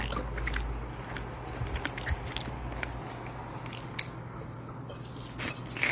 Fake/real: real